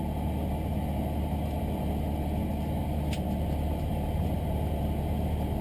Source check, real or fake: real